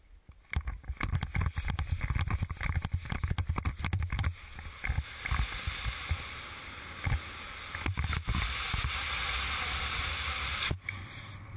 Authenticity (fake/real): real